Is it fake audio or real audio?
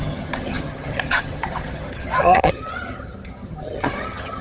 fake